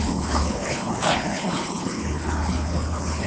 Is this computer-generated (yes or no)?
yes